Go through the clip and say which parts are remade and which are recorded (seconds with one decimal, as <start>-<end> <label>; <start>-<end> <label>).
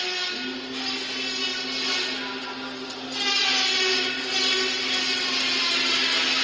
0.0-6.4 recorded